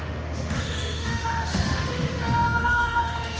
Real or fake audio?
fake